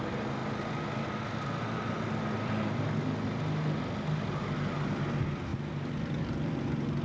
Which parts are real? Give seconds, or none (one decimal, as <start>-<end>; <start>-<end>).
0.0-7.0